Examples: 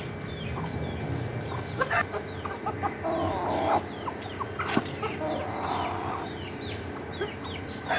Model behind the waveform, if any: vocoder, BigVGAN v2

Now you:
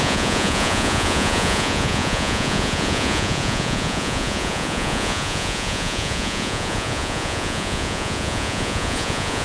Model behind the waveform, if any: vocoder, Vocos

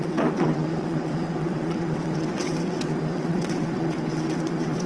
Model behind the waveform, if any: vocoder, WaveNeXt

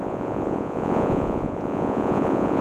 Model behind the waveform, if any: vocoder, Vocos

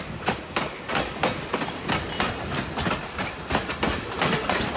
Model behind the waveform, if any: none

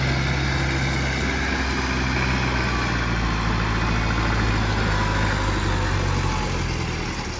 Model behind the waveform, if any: none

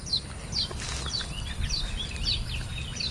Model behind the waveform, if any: none